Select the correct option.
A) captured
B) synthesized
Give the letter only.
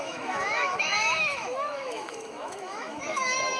B